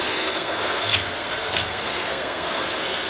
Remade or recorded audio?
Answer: remade